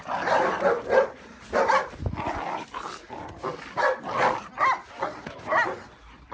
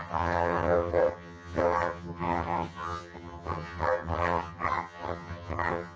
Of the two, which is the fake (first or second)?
second